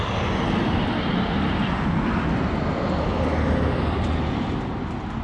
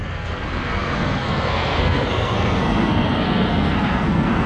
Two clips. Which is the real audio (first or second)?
first